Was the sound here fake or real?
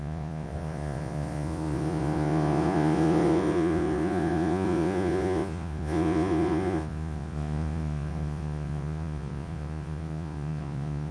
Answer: fake